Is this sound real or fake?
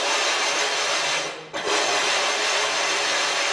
real